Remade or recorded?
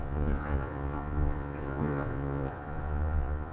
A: remade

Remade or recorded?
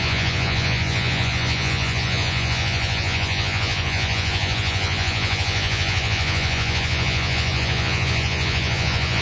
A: remade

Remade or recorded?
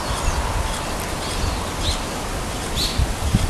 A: recorded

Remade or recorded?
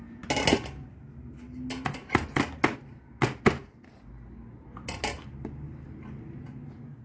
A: recorded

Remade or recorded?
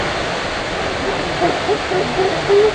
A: recorded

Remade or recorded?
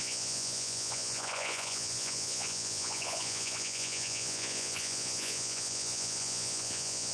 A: remade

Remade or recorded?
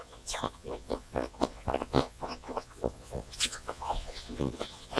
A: remade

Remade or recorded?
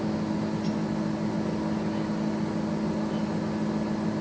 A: recorded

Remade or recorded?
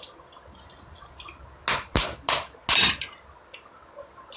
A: recorded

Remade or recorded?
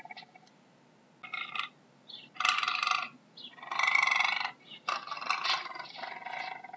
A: recorded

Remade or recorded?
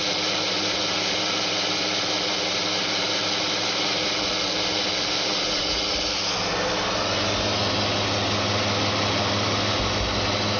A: recorded